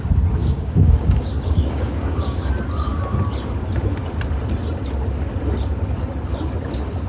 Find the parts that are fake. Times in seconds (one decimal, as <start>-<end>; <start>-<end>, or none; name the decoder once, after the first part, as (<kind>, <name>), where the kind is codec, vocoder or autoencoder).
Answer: 0.4-2.5 (codec, DAC)